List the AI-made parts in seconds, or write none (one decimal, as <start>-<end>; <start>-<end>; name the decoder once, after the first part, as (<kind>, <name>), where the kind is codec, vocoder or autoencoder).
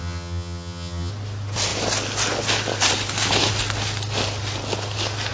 0.0-1.1 (vocoder, HiFi-GAN)